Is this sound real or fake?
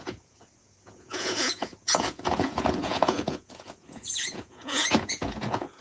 fake